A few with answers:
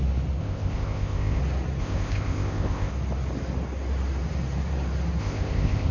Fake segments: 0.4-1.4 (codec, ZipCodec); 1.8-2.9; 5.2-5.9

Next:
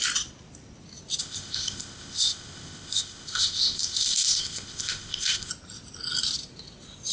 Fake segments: 1.2-5.5 (codec, ZipCodec)